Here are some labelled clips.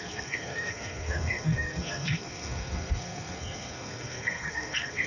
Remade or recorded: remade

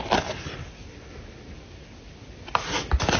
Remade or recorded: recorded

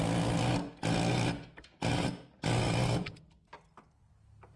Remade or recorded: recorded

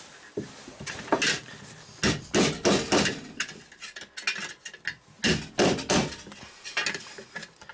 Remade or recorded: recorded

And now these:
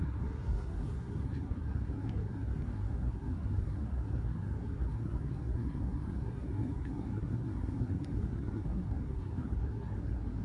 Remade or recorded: remade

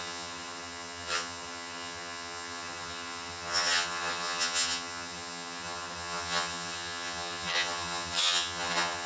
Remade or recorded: remade